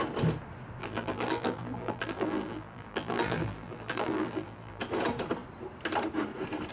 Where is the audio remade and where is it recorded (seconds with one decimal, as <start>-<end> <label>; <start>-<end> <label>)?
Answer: 0.0-0.8 recorded; 0.8-4.8 remade; 4.8-6.7 recorded